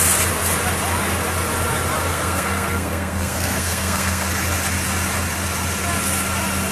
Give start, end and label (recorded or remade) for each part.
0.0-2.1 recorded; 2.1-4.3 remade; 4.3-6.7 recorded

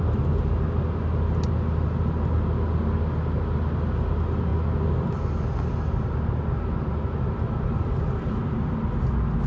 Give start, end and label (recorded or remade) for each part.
0.0-9.5 recorded

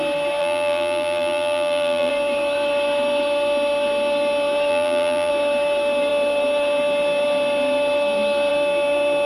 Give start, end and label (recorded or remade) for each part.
0.0-0.4 recorded; 0.4-2.1 remade; 2.1-4.7 recorded; 4.7-5.3 remade; 5.3-9.3 recorded

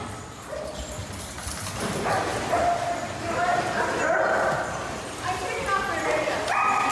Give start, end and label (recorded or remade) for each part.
0.0-6.9 recorded